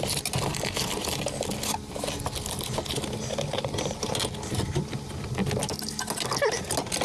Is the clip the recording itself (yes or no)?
yes